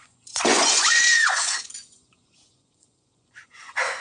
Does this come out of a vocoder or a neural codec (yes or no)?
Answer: yes